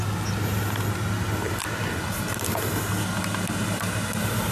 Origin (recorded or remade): recorded